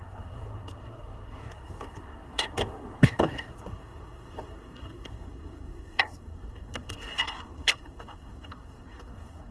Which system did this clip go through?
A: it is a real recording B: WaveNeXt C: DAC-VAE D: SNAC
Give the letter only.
D